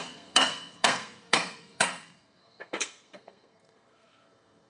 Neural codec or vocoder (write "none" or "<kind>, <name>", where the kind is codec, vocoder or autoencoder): codec, SNAC